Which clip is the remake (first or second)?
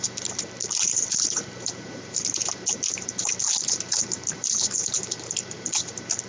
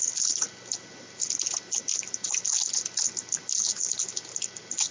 first